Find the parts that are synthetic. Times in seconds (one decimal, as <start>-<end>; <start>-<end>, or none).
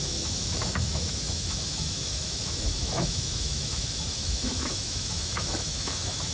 0.0-6.3